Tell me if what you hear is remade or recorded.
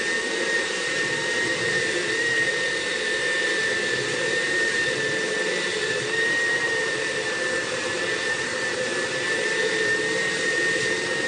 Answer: remade